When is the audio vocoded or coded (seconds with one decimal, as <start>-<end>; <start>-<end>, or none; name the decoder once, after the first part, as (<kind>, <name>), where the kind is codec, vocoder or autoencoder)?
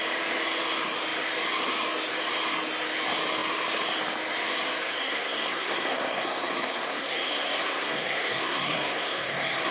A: 5.0-9.7 (codec, SNAC)